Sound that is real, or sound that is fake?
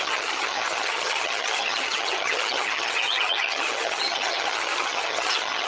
fake